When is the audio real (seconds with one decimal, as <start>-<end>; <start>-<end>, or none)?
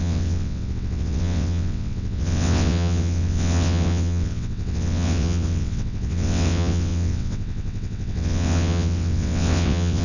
none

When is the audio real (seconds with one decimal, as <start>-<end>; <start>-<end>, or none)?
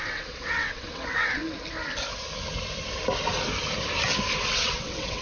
1.4-4.5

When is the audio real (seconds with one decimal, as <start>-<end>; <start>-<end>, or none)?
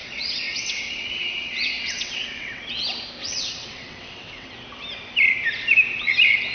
2.6-3.2; 4.5-6.5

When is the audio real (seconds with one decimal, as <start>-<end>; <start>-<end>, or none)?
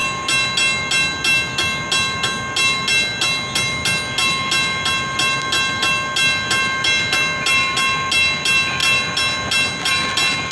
0.0-10.5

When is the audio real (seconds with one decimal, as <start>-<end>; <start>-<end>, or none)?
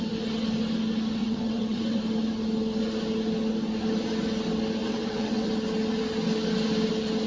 0.0-1.2; 2.0-4.8; 5.5-7.3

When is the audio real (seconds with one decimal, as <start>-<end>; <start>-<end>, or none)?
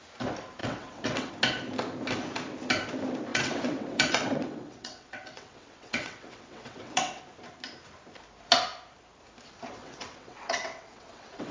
0.0-0.6; 1.3-3.3; 7.2-9.8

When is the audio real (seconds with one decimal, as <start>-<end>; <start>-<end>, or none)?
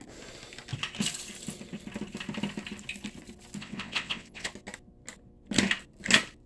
0.0-3.6; 4.5-6.5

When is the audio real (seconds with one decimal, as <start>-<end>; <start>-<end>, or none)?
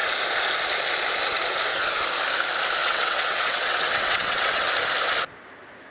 0.0-2.8; 4.6-5.9